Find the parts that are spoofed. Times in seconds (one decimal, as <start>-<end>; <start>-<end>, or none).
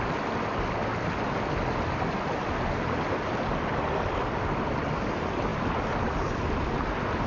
none